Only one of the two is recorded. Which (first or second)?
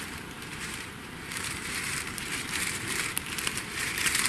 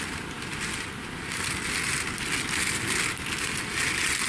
second